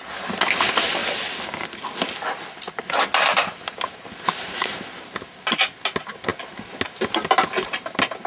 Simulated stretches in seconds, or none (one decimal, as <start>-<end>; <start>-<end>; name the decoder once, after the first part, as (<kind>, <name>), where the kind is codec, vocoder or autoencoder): none